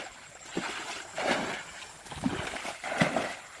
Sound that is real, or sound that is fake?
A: fake